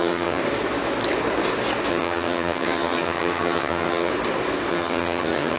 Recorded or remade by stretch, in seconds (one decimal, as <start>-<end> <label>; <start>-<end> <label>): 0.0-0.4 remade; 0.4-1.9 recorded; 1.9-4.1 remade; 4.1-4.7 recorded; 4.7-5.6 remade